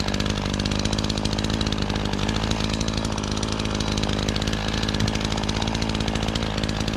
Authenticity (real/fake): real